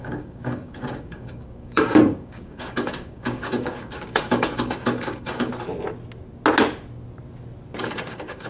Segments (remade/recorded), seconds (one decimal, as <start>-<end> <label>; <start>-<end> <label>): 0.0-5.5 remade; 5.5-7.8 recorded; 7.8-8.5 remade